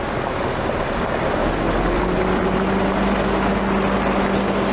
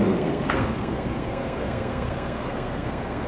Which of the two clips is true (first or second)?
first